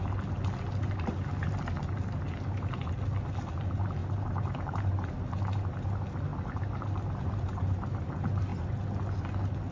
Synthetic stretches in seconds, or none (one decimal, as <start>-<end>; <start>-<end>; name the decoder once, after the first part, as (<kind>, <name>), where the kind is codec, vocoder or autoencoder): 4.0-5.2 (vocoder, BigVGAN v2); 6.3-8.1